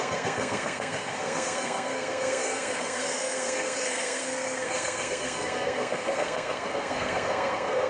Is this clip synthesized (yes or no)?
yes